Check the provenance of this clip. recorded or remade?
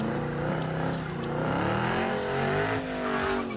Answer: recorded